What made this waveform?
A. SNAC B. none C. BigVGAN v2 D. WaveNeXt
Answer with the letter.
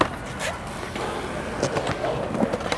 B